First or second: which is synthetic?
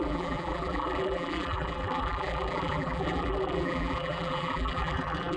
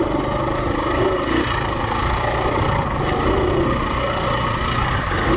first